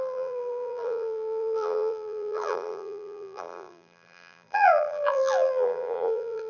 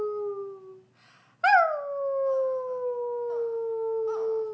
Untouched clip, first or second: second